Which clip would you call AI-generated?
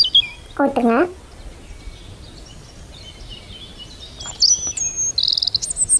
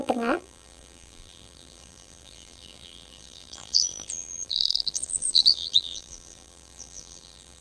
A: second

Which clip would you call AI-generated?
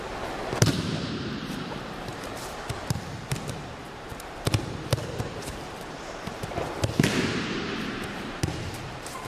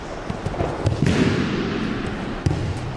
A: first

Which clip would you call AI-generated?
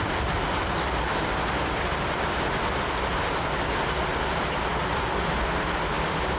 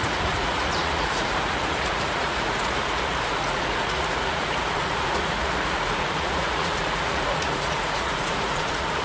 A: second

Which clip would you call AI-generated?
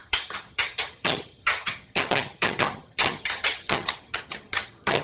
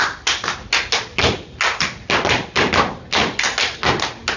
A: first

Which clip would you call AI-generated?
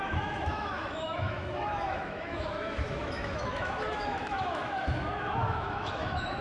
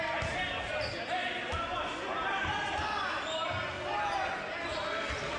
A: first